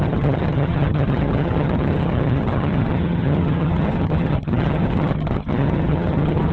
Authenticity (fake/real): fake